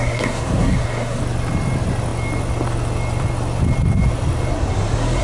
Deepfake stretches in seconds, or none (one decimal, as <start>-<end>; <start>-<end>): 0.0-1.2